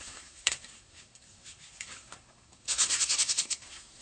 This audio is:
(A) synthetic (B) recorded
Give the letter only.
A